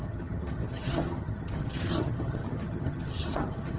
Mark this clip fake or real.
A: fake